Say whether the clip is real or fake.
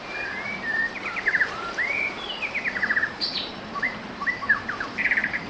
fake